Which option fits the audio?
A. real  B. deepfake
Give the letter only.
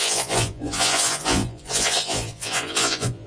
B